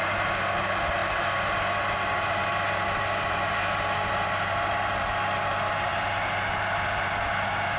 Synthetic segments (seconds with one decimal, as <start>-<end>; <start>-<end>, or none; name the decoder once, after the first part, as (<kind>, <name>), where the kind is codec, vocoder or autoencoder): none